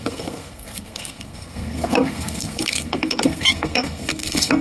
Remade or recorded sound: remade